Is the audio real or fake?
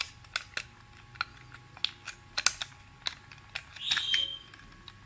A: real